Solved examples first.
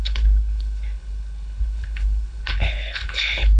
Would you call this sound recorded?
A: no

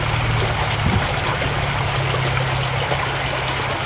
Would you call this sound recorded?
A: yes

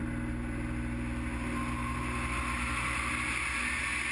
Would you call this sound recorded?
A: yes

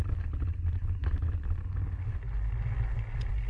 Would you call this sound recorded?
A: yes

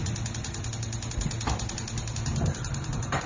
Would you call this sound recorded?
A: yes